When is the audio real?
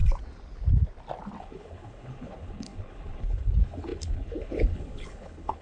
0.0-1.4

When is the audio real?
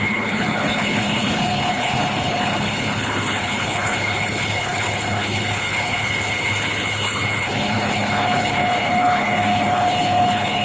none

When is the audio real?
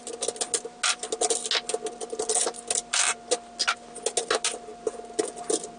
0.0-5.8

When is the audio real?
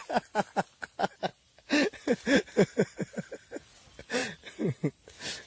0.0-5.5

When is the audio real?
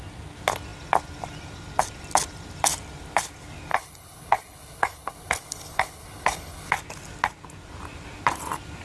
0.0-3.7; 6.7-8.8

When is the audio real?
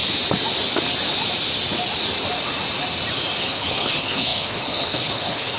0.0-3.4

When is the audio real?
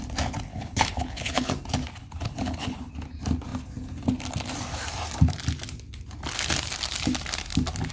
0.0-0.5; 1.5-2.0; 2.9-7.9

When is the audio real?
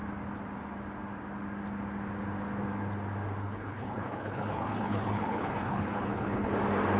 0.0-3.4; 6.5-7.0